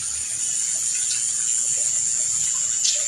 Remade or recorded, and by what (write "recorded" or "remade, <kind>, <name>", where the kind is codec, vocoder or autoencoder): recorded